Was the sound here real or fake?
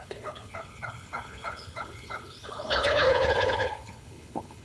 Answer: fake